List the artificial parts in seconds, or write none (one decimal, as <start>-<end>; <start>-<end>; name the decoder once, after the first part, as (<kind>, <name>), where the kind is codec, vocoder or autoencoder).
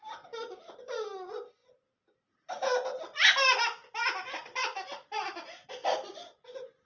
none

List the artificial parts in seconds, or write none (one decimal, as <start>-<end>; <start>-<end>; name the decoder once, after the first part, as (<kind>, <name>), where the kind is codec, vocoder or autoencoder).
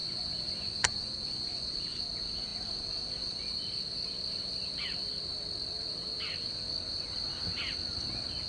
0.0-2.0 (vocoder, Vocos)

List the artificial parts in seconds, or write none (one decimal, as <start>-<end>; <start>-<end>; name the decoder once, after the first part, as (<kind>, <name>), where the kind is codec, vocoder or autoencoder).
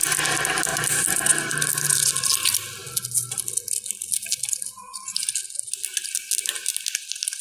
none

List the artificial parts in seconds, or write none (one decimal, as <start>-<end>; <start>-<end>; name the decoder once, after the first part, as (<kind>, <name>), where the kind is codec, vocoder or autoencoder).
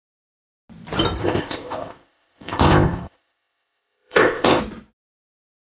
1.2-4.6 (codec, ZipCodec)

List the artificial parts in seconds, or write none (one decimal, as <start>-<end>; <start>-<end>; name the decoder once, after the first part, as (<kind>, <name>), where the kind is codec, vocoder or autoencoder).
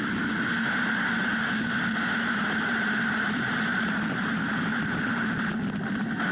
none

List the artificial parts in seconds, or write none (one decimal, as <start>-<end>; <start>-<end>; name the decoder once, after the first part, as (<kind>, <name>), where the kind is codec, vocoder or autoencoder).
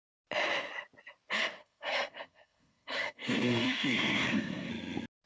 1.6-4.7 (codec, SNAC)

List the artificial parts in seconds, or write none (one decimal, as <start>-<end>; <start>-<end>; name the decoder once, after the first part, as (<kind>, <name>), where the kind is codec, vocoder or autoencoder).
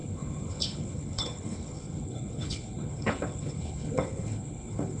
0.0-5.0 (codec, HILCodec)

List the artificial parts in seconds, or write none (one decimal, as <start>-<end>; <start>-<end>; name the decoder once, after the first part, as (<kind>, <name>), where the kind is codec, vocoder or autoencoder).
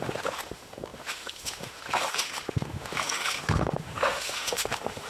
0.0-5.1 (autoencoder, DAC-VAE)